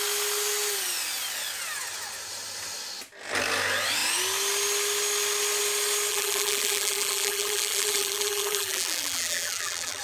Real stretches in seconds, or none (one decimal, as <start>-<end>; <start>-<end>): 0.0-6.1